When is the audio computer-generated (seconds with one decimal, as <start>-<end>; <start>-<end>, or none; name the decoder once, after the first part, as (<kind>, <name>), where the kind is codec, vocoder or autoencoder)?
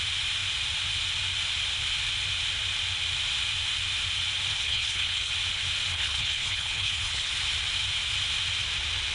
4.5-5.3 (codec, HILCodec); 5.9-7.3